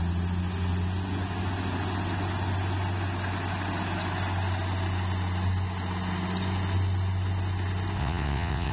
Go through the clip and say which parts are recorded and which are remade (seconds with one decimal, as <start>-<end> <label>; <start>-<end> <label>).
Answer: 0.0-8.0 recorded; 8.0-8.7 remade